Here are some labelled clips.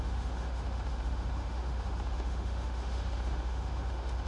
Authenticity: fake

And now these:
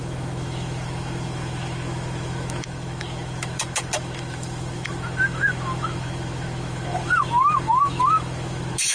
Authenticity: fake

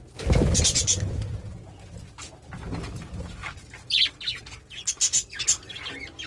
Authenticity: real